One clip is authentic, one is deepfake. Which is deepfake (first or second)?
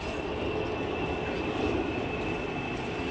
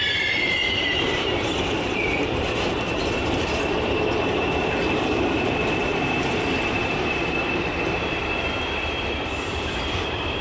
second